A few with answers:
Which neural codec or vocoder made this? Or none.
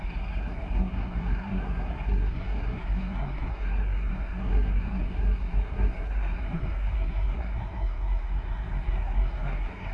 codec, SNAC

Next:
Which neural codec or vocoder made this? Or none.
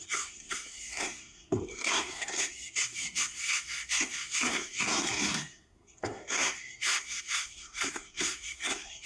codec, SNAC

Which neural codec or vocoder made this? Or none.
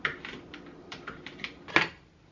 none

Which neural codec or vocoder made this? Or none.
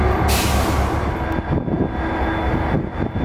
none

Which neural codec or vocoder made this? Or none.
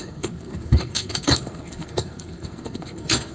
codec, SNAC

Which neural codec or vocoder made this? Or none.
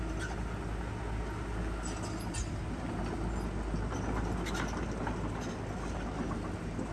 none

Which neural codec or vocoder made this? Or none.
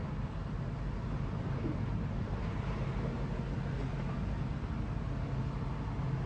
none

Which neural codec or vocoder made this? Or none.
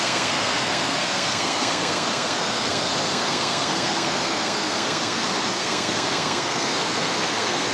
codec, SNAC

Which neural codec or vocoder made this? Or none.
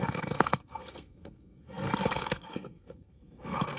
codec, SNAC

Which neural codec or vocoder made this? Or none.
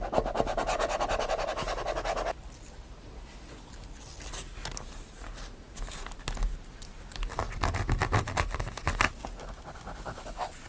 none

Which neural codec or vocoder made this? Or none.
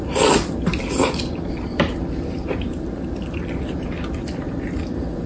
none